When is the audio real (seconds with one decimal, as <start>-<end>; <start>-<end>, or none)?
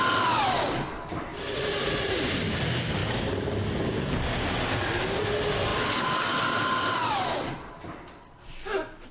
0.0-1.3; 2.1-9.1